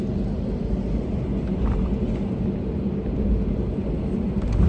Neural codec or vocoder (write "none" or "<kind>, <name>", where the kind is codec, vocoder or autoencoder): none